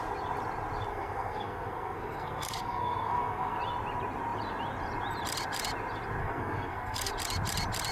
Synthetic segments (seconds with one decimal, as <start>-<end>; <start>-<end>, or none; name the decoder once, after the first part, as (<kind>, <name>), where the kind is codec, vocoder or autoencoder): 0.9-3.6 (codec, SNAC); 6.2-7.1